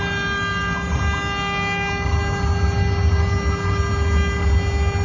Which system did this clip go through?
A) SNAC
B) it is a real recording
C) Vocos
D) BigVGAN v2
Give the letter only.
B